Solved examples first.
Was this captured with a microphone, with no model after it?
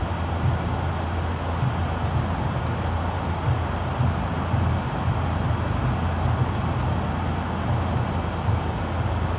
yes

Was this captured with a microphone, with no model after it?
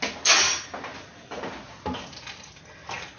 yes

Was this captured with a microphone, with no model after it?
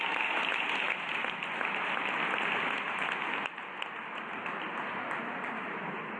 yes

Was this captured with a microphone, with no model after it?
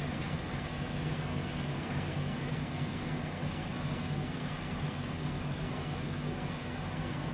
no